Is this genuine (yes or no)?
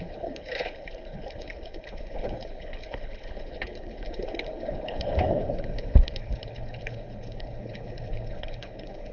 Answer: no